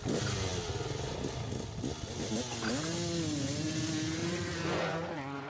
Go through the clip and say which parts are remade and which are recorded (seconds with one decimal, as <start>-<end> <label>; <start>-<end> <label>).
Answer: 0.0-4.2 recorded; 4.2-5.5 remade